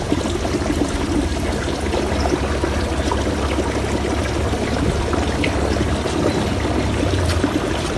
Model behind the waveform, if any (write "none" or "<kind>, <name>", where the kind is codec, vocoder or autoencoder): none